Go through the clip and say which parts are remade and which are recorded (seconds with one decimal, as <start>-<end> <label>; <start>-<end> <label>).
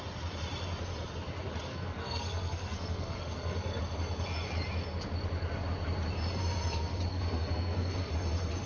0.0-1.7 recorded; 1.7-3.8 remade; 3.8-7.1 recorded; 7.1-8.1 remade; 8.1-8.7 recorded